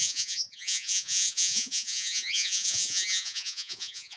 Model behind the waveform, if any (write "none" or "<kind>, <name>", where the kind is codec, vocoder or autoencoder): vocoder, Vocos